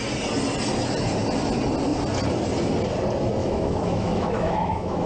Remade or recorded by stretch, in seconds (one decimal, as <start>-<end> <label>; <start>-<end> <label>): 0.0-3.4 recorded; 3.4-5.1 remade

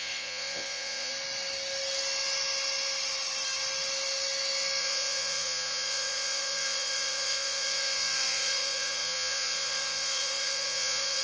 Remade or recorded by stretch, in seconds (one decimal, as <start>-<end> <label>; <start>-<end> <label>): 0.0-1.1 remade; 1.1-4.8 recorded; 4.8-11.2 remade

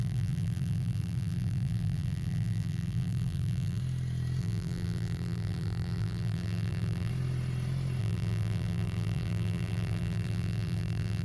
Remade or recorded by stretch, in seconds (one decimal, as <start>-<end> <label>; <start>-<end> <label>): 0.0-3.8 remade; 3.8-4.4 recorded; 4.4-7.1 remade; 7.1-8.0 recorded; 8.0-11.2 remade